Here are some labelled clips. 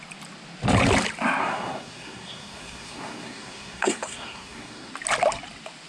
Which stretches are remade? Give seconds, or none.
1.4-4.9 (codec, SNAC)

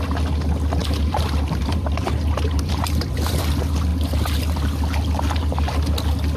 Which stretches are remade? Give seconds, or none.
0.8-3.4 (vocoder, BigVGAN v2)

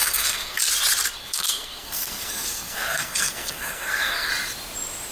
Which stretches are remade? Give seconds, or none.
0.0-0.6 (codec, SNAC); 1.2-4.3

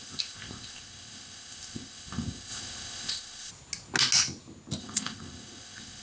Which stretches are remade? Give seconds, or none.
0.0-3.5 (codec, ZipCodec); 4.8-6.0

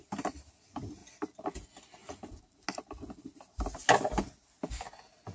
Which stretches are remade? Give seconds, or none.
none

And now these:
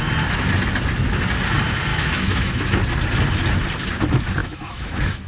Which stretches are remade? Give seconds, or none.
1.9-2.8 (autoencoder, DAC-VAE); 4.4-5.3

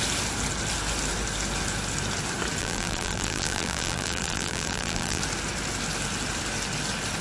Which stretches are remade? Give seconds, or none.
2.6-5.2 (vocoder, BigVGAN v2)

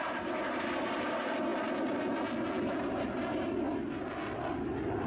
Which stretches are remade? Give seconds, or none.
none